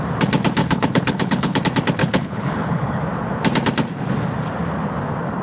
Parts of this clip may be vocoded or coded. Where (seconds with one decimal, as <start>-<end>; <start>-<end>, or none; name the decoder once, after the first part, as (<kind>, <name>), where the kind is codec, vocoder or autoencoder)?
0.6-1.6 (codec, HILCodec); 2.0-3.0